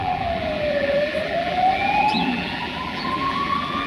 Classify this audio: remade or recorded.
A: remade